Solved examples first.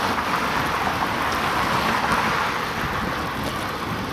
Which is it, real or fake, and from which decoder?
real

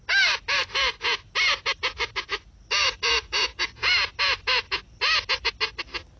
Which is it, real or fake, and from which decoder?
real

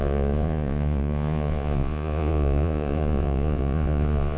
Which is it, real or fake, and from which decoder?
fake, vocoder, Vocos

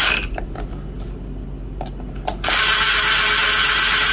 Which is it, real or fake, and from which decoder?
real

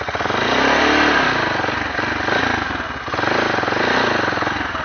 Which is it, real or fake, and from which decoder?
real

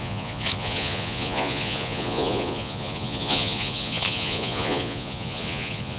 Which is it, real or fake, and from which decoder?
fake, vocoder, Vocos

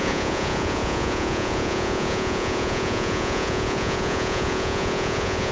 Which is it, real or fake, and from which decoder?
fake, vocoder, Vocos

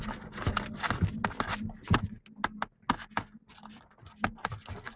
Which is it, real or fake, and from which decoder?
real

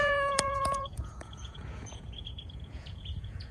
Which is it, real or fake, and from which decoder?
fake, vocoder, Vocos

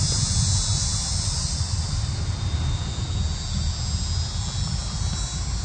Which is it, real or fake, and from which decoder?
real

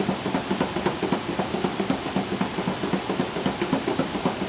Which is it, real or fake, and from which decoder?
real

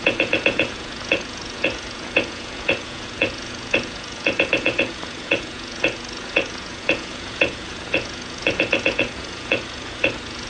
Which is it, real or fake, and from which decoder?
fake, vocoder, Vocos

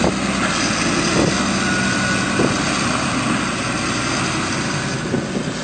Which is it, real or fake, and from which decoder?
real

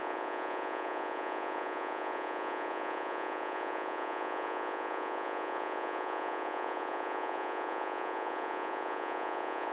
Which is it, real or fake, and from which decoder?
fake, vocoder, Vocos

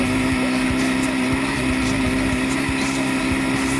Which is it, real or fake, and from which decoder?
real